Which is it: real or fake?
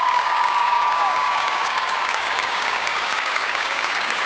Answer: fake